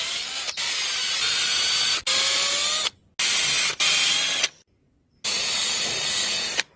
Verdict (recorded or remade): recorded